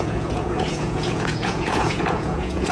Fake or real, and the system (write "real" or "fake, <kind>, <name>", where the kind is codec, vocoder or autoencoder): fake, vocoder, Vocos